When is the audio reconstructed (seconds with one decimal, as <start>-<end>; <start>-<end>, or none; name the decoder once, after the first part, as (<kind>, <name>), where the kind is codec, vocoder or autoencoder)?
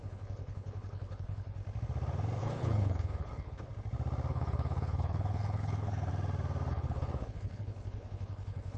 0.0-1.6 (codec, HILCodec); 2.4-3.7; 4.3-6.1; 6.7-8.8